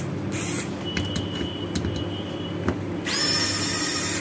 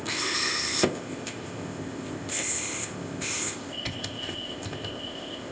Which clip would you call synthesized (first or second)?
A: second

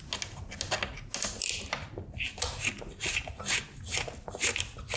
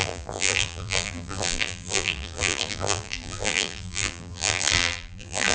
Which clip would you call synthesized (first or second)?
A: second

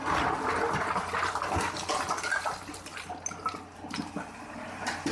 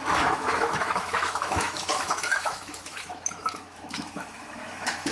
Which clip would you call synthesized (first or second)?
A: second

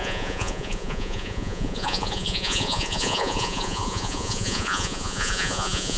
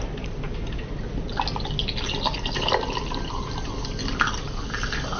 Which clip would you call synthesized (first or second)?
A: first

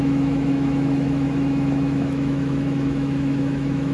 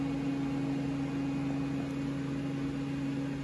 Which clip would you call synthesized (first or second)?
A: first